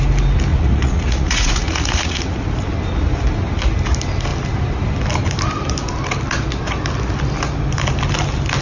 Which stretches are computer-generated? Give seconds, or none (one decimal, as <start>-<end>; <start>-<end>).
0.5-2.2